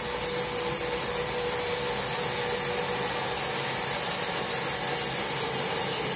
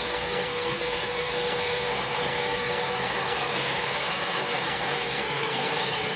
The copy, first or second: second